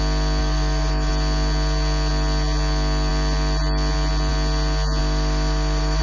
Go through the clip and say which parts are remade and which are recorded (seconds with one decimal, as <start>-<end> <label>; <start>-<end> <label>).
0.0-0.4 recorded; 0.4-1.1 remade; 1.1-5.0 recorded; 5.0-6.0 remade